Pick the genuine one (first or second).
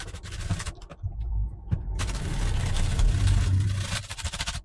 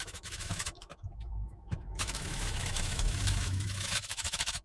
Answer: first